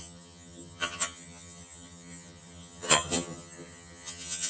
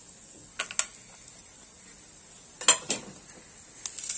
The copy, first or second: first